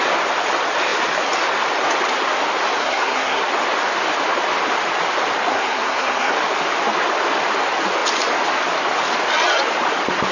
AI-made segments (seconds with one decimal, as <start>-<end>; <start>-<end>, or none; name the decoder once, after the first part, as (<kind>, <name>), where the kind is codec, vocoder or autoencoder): 2.8-3.4 (codec, SNAC); 5.5-6.3